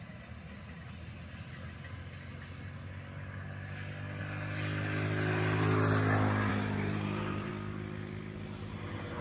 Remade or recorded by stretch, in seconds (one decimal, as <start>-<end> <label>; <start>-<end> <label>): 0.0-6.5 recorded; 6.5-7.5 remade; 7.5-9.2 recorded